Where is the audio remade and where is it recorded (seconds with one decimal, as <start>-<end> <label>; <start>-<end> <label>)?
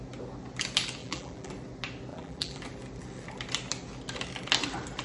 0.0-1.0 recorded; 1.0-1.5 remade; 1.5-2.1 recorded; 2.1-2.6 remade; 2.6-5.0 recorded